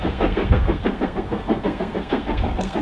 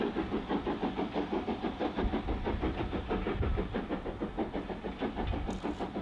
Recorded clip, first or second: second